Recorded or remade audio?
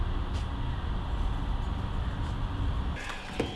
recorded